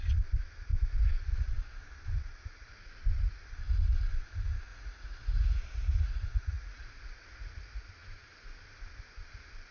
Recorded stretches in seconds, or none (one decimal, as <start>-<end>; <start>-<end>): 0.0-4.7; 7.9-9.7